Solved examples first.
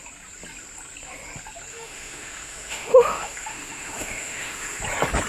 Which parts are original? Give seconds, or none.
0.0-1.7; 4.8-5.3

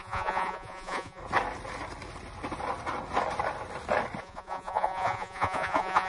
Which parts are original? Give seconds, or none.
1.2-4.2

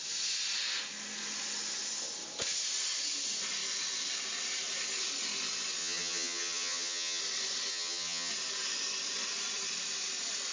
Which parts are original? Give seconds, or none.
0.0-5.8; 7.2-7.7; 8.3-10.5

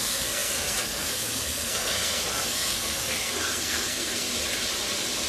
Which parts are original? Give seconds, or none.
4.3-5.3

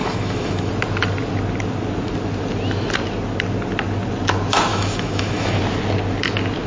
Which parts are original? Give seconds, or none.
0.7-4.7; 5.6-6.7

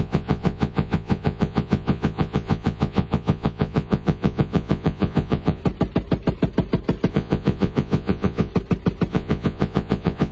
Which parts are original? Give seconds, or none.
5.6-7.1; 8.5-9.1

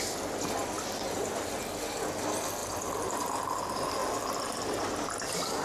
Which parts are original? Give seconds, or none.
0.0-0.6; 1.6-2.6; 3.4-4.0; 4.8-5.6